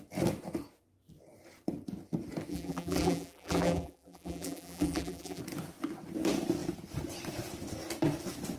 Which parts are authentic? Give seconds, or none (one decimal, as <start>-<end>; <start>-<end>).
0.0-2.5; 5.4-8.6